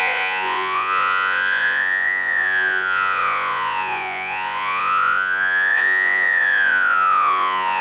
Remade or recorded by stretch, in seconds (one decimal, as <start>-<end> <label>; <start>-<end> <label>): 0.0-7.8 remade